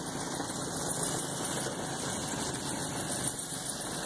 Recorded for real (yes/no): yes